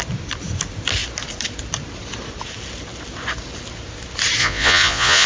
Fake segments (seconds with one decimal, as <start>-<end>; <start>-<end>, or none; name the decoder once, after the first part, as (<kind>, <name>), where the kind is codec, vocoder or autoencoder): 4.4-5.3 (vocoder, Vocos)